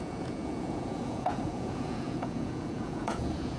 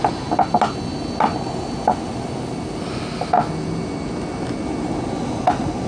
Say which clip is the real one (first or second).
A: second